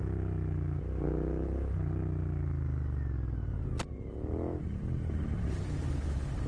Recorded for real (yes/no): yes